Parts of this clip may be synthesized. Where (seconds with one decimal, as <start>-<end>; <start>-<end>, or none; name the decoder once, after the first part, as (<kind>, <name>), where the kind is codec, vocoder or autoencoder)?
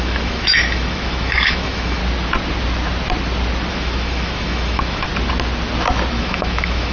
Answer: 0.0-2.0 (autoencoder, DAC-VAE); 3.7-5.1; 6.1-6.9